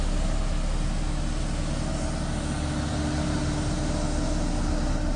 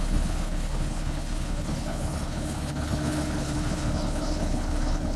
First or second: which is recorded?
first